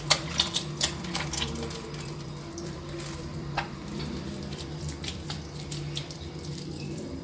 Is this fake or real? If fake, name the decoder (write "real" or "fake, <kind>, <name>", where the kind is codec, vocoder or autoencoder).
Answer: fake, vocoder, BigVGAN v2